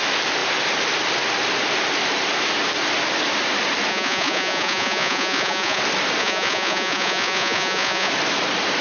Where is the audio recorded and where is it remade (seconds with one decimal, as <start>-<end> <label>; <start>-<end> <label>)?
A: 0.0-3.9 recorded; 3.9-5.8 remade; 5.8-6.2 recorded; 6.2-8.1 remade; 8.1-8.8 recorded